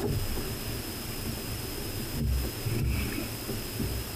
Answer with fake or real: real